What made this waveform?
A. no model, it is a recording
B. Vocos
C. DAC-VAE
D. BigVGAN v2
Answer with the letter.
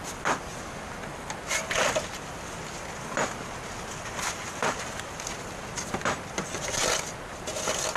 A